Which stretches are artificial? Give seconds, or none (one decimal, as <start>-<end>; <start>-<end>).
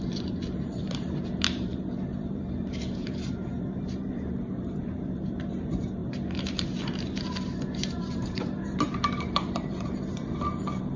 0.0-11.0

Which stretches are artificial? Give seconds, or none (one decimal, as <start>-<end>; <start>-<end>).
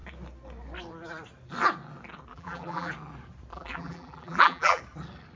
2.3-2.9; 3.5-4.8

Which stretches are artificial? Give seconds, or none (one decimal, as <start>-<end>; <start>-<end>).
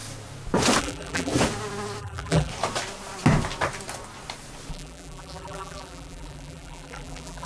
0.8-1.3; 2.0-2.5; 4.7-7.5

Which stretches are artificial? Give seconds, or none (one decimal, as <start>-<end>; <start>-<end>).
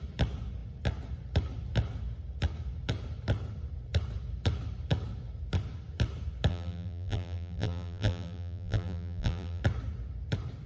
6.5-9.6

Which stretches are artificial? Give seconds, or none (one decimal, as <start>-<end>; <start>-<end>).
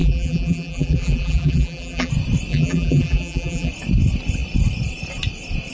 0.0-2.1; 2.5-3.7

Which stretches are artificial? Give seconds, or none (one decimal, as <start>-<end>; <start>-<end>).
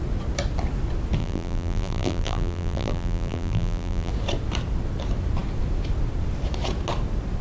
1.2-4.1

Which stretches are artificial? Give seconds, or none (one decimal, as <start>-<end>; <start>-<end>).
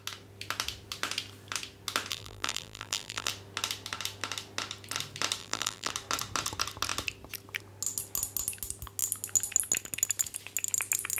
2.1-3.3; 5.4-5.9